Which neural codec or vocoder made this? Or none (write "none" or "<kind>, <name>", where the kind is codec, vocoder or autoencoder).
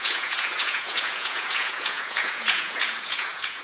vocoder, Vocos